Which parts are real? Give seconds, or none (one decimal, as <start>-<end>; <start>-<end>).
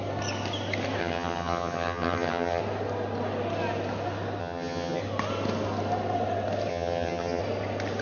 0.0-1.0; 2.6-4.4; 5.0-6.7; 7.4-8.0